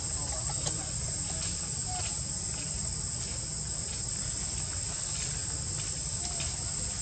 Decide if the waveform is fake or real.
real